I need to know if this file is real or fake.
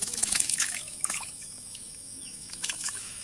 fake